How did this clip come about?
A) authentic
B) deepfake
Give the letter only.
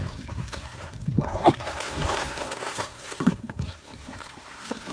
B